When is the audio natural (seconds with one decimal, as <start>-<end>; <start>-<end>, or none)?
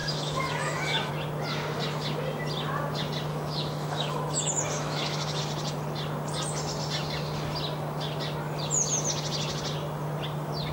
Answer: 1.1-3.3; 5.4-10.7